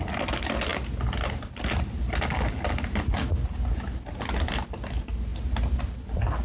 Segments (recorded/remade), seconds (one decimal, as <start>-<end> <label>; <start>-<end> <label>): 0.0-6.4 recorded